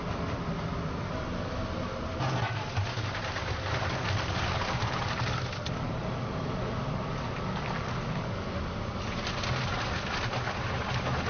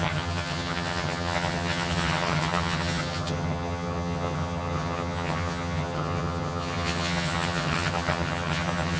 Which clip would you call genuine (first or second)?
first